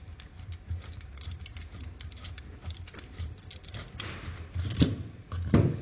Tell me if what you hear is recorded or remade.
recorded